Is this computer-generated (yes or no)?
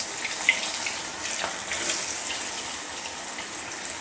no